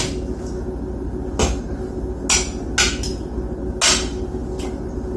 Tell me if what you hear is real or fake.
real